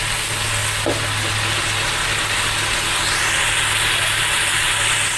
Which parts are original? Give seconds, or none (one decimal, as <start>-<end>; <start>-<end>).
0.0-5.2